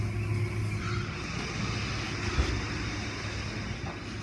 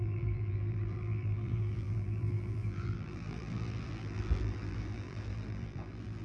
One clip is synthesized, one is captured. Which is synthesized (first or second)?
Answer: second